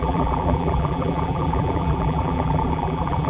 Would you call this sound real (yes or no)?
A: no